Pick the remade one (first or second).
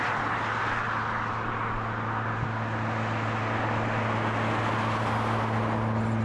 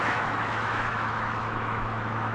second